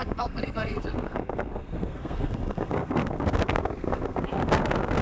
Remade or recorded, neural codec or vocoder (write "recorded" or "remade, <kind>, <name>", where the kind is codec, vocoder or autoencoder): remade, codec, SNAC